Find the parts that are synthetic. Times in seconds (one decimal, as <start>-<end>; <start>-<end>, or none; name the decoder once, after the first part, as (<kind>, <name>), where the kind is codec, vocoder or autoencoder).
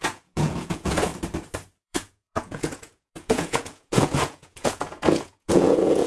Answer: 0.0-1.1 (vocoder, Vocos); 1.8-6.1